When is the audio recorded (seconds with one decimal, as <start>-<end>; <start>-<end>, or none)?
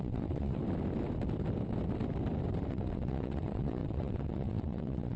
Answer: 0.6-2.7